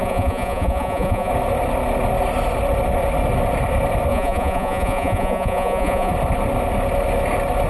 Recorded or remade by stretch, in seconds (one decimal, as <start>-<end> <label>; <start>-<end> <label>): 0.0-1.3 remade; 1.3-4.1 recorded; 4.1-6.1 remade; 6.1-7.7 recorded